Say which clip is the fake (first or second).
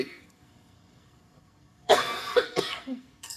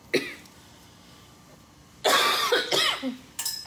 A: first